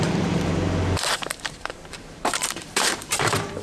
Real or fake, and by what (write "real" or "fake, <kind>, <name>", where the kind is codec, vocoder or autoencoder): fake, vocoder, BigVGAN v2